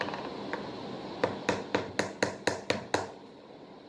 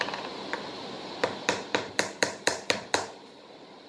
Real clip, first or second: first